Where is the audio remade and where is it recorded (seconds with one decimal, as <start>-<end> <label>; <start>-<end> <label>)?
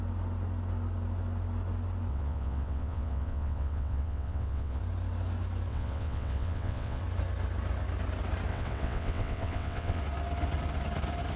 0.0-2.1 recorded; 2.1-4.8 remade; 4.8-5.7 recorded; 5.7-7.0 remade; 7.0-8.5 recorded; 8.5-10.0 remade; 10.0-11.4 recorded